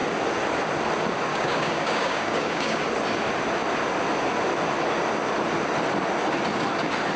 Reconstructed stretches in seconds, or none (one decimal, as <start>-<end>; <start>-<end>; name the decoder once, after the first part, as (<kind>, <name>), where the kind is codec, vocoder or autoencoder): 1.3-2.8 (codec, DAC)